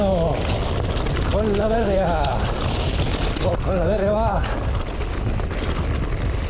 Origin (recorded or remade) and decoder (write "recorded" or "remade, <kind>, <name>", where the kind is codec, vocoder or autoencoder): recorded